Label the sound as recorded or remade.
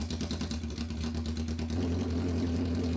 recorded